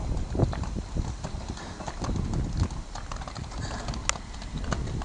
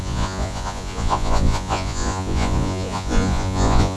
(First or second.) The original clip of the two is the first